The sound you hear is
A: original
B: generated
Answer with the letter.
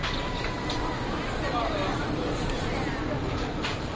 A